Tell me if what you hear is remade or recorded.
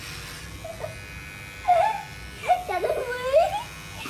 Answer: recorded